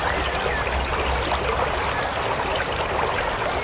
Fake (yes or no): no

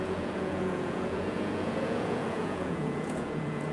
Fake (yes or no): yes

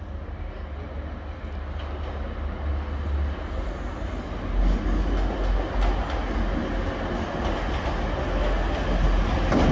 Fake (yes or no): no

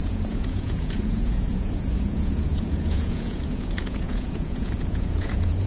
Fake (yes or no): yes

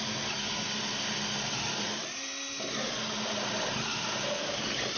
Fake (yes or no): no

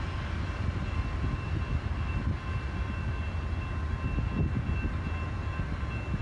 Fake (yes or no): no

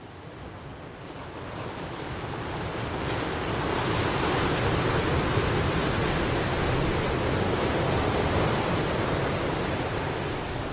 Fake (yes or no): no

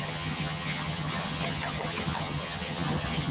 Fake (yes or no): yes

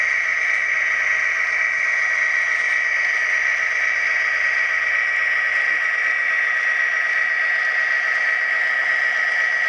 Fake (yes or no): no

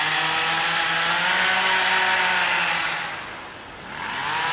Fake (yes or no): no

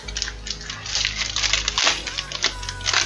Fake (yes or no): no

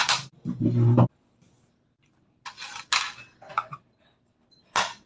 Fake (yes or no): no